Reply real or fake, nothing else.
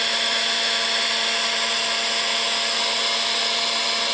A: real